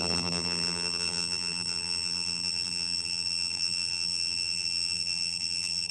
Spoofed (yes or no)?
yes